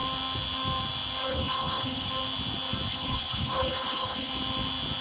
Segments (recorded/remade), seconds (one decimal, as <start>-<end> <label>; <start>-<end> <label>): 0.0-1.3 recorded; 1.3-2.1 remade; 2.1-2.9 recorded; 2.9-4.3 remade; 4.3-5.0 recorded